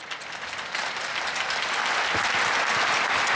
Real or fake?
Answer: real